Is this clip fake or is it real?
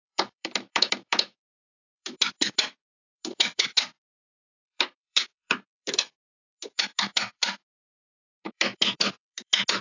fake